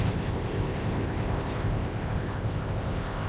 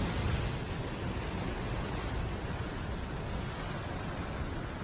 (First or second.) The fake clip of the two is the first